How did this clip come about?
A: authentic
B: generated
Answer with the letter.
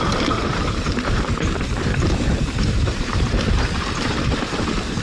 B